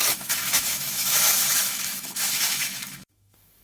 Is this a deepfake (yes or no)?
yes